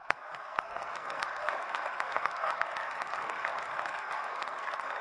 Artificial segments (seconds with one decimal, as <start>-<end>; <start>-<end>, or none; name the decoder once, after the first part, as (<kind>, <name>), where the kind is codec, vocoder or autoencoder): 0.0-5.0 (codec, SNAC)